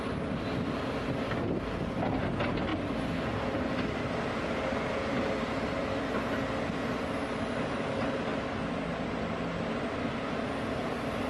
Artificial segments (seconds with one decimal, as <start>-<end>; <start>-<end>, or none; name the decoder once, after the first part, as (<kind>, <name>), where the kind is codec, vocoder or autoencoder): none

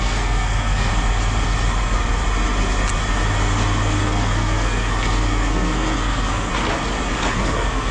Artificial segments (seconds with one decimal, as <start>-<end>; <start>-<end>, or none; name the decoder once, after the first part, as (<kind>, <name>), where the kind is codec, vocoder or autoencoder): 0.0-0.9 (codec, SNAC); 4.0-6.5; 7.3-7.9

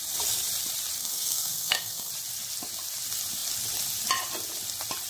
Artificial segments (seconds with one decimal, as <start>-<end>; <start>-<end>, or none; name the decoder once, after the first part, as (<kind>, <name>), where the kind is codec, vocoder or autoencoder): 1.0-2.1 (codec, SNAC)

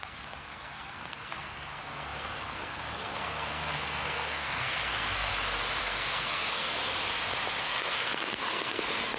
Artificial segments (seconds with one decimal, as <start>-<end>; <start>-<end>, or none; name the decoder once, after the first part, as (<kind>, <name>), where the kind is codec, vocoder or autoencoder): 0.0-5.3 (codec, SNAC); 5.8-6.8; 7.6-9.2

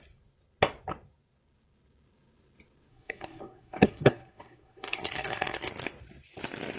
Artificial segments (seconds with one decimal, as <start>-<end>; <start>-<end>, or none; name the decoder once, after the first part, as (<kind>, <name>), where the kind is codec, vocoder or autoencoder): 2.9-5.7 (codec, SNAC)

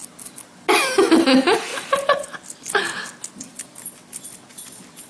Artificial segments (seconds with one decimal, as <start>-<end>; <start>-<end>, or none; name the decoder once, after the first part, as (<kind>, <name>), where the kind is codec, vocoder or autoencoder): none